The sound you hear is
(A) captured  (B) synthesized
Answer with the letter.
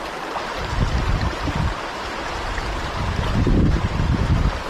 A